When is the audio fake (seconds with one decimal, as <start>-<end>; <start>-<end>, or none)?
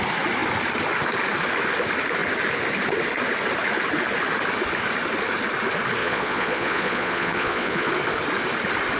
6.0-7.9